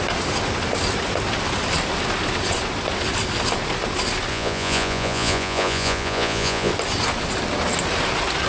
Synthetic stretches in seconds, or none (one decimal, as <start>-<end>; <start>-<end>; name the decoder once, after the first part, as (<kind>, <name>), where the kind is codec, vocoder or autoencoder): 4.3-6.7 (vocoder, Vocos)